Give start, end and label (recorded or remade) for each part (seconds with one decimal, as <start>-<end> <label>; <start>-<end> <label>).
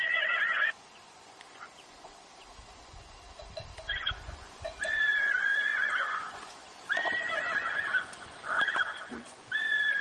0.0-10.0 remade